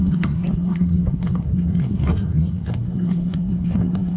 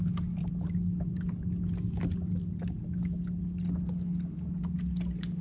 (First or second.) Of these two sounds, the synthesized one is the first